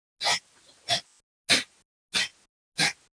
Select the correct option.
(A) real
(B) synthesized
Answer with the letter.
A